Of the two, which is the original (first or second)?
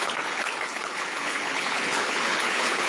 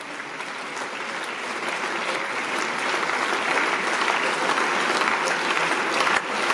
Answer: second